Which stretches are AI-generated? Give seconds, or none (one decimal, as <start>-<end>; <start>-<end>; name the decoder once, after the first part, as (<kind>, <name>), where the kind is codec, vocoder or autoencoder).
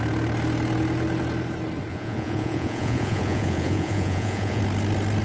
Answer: 1.9-4.6 (vocoder, Vocos)